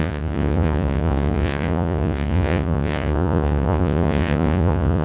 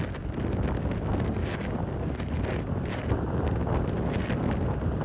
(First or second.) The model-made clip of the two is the first